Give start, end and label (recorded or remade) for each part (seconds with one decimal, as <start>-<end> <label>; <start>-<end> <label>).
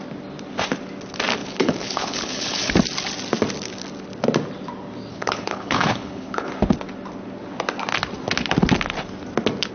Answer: 0.0-1.4 recorded; 1.4-2.7 remade; 2.7-5.1 recorded; 5.1-6.5 remade; 6.5-9.7 recorded